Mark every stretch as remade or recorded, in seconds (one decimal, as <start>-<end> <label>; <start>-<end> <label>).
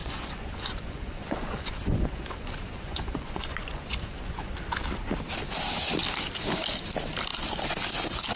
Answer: 0.0-4.5 remade; 4.5-8.4 recorded